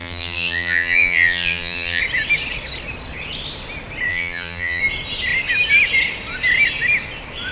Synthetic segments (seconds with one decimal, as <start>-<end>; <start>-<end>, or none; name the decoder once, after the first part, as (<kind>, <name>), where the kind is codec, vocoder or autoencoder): 0.0-2.0 (vocoder, BigVGAN v2); 4.1-4.8